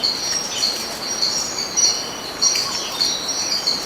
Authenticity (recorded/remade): recorded